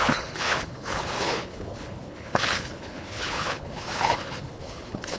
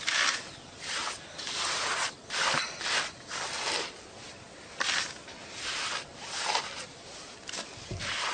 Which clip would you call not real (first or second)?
first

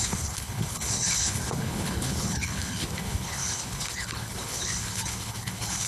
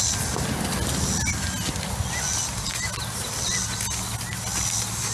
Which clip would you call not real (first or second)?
first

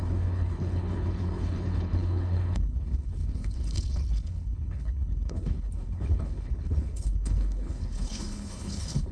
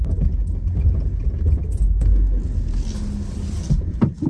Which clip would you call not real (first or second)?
first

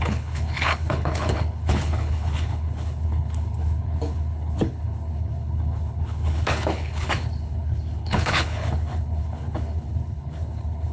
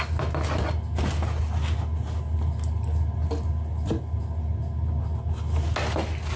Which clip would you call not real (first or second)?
first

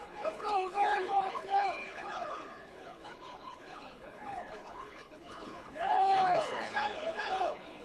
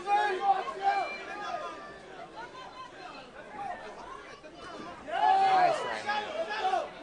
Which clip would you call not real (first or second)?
first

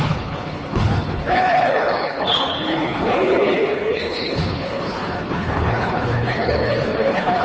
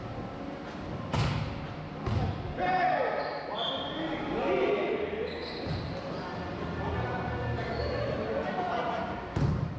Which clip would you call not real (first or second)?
first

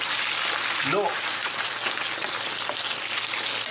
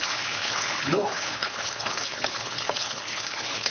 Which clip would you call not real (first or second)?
second